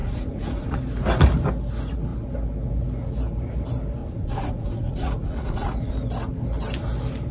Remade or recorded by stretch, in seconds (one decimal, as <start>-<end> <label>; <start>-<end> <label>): 0.0-0.8 remade; 0.8-4.0 recorded; 4.0-5.9 remade; 5.9-7.3 recorded